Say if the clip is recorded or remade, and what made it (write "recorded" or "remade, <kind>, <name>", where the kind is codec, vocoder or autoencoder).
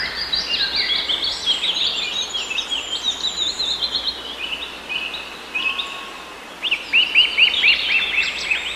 recorded